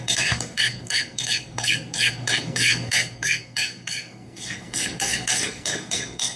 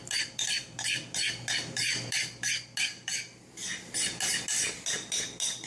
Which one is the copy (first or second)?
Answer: first